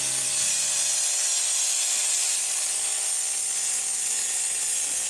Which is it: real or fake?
real